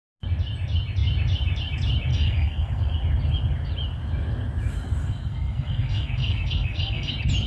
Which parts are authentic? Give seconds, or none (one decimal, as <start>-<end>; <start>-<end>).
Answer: 0.0-2.1; 2.9-5.0; 7.1-7.5

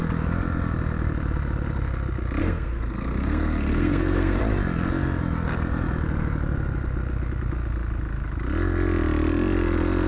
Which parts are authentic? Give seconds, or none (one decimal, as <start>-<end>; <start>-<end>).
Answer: 0.0-2.4; 4.4-10.1

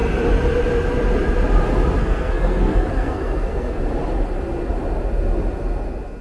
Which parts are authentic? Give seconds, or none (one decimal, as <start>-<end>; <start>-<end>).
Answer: 0.0-2.0; 3.8-6.2

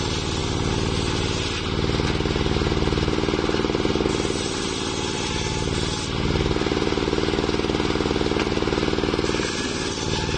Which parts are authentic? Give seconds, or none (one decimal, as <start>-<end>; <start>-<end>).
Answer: 0.0-10.4

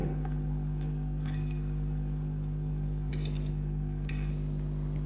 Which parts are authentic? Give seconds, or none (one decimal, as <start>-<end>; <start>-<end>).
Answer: 3.1-3.5; 4.3-5.1

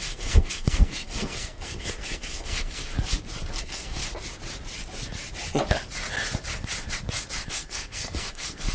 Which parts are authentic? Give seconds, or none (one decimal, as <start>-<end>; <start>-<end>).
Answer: 2.9-3.6; 4.0-7.5

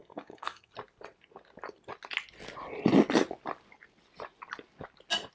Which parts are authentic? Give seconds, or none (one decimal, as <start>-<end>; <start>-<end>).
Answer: 0.7-5.3